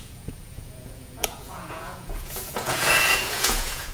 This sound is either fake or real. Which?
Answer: fake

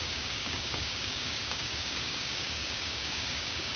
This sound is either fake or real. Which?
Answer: fake